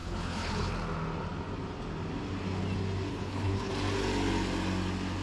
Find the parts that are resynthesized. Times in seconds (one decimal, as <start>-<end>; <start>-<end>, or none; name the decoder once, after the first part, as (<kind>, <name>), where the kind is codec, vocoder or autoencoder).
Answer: 0.0-0.7 (codec, HILCodec); 3.1-3.7